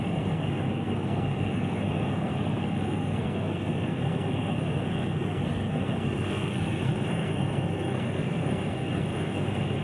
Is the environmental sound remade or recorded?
remade